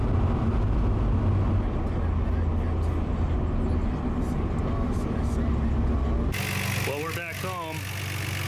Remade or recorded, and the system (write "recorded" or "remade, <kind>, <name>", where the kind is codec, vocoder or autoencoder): recorded